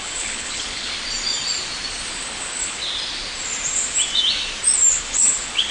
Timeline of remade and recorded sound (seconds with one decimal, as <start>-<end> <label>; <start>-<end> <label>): 0.0-0.9 remade; 0.9-2.1 recorded; 2.1-2.8 remade; 2.8-4.9 recorded; 4.9-5.7 remade